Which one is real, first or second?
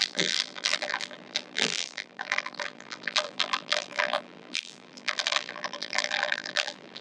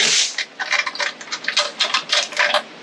second